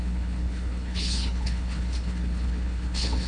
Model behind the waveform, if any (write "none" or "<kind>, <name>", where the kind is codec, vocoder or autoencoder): codec, HILCodec